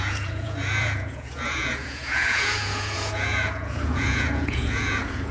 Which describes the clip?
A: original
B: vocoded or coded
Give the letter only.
B